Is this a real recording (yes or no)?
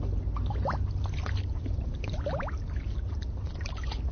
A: yes